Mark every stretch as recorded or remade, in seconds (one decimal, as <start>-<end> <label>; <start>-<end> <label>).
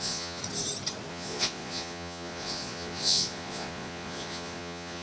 0.0-0.4 remade; 0.4-1.1 recorded; 1.1-5.0 remade